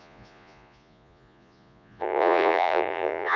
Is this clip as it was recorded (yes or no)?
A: no